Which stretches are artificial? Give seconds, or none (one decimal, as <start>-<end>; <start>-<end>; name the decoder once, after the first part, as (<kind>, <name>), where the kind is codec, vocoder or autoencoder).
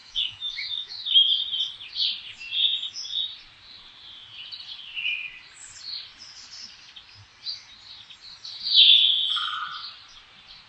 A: 0.0-1.4 (autoencoder, DAC-VAE)